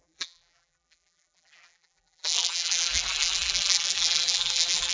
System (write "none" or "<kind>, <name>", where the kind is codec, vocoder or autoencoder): vocoder, BigVGAN v2